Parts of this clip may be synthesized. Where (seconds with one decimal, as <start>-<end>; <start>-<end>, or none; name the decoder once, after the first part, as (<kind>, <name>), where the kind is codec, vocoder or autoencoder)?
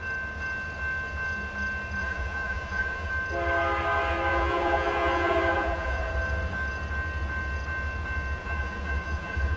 2.0-3.1 (vocoder, Vocos); 4.3-6.1; 8.4-9.6